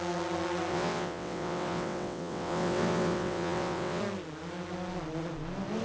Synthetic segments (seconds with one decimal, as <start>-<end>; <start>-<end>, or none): 0.7-4.0